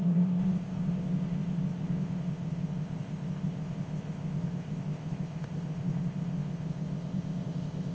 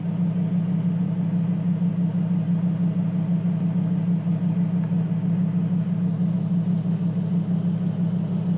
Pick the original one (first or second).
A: second